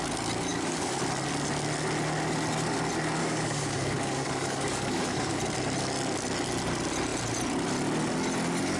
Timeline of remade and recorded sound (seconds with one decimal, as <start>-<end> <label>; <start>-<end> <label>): 0.0-0.5 recorded; 0.5-1.0 remade; 1.0-3.2 recorded; 3.2-5.4 remade; 5.4-8.8 recorded